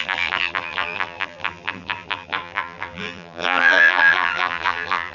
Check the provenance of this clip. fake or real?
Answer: fake